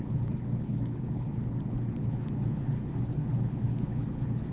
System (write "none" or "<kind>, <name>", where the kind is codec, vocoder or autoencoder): codec, HILCodec